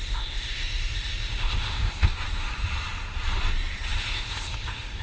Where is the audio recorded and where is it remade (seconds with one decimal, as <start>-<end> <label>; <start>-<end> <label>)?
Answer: 0.0-2.1 remade; 2.1-4.0 recorded; 4.0-5.0 remade